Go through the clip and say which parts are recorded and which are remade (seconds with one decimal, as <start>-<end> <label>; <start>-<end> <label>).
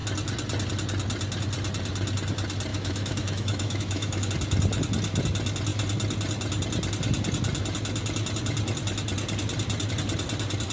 0.0-2.7 recorded; 2.7-4.3 remade; 4.3-10.7 recorded